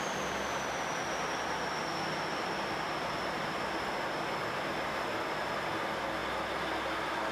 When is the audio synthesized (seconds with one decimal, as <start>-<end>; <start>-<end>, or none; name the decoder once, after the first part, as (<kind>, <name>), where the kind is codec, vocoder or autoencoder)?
none